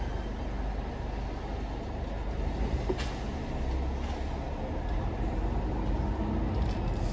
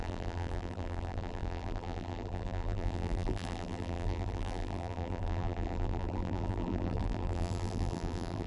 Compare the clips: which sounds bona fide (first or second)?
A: first